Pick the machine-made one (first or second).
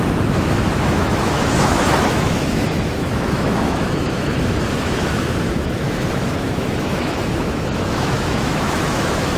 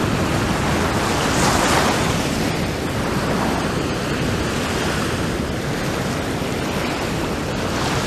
first